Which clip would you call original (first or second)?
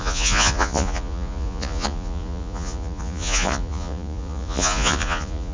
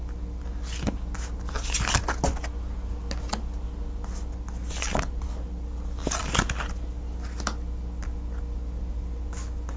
second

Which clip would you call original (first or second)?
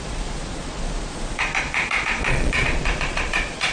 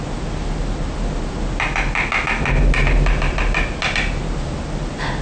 second